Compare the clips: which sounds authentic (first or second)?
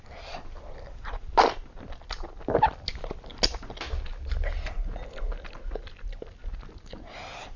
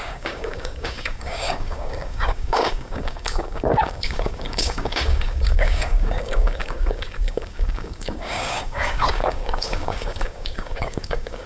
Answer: first